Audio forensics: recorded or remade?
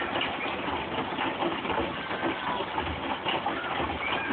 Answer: recorded